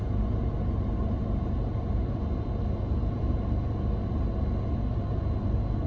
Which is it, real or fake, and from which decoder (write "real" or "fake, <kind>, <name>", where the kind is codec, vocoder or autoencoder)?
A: real